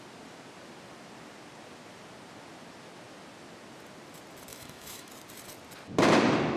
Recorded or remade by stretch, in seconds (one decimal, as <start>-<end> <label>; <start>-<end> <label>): 0.0-4.5 recorded; 4.5-5.1 remade; 5.1-6.6 recorded